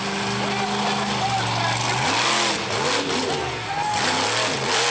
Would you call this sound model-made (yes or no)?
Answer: no